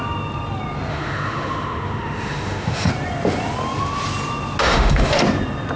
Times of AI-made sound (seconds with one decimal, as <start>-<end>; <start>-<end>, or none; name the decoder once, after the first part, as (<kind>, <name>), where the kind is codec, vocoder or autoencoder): 0.9-2.9 (autoencoder, DAC-VAE); 4.6-5.2